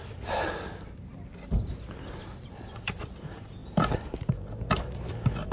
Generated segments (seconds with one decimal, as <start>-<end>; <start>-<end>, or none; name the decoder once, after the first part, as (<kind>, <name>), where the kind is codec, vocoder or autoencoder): none